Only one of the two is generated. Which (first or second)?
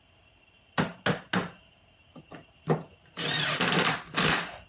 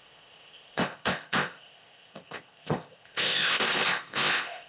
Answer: second